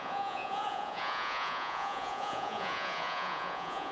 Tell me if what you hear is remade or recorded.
remade